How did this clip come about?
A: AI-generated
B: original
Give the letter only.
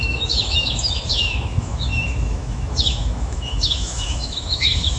A